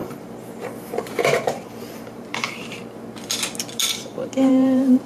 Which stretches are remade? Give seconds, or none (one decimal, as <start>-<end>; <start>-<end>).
0.0-2.8; 3.8-5.1